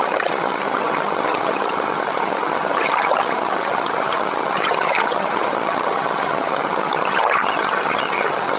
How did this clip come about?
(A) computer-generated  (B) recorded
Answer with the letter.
A